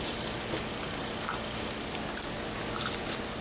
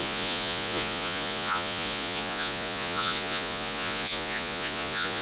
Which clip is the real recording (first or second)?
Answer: first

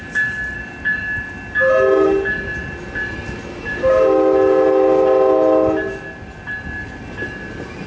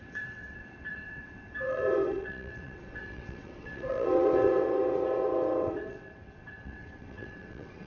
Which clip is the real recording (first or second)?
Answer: first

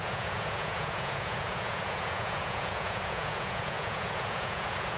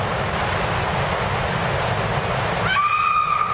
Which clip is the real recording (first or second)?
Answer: second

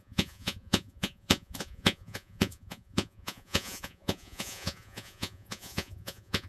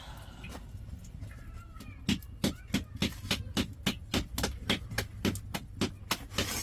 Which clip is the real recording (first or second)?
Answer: second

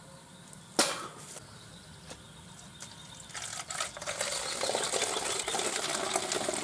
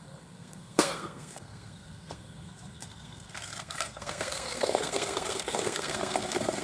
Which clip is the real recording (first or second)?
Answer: first